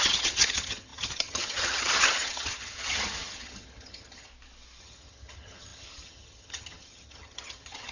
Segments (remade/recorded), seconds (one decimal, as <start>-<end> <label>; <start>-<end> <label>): 0.0-4.3 remade; 4.3-4.8 recorded; 4.8-7.9 remade